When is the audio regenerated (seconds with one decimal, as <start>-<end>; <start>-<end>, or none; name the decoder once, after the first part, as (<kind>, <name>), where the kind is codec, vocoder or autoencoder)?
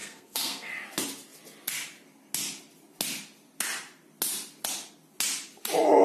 0.0-0.7 (codec, SNAC)